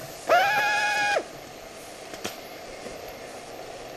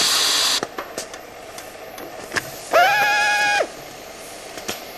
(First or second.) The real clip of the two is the second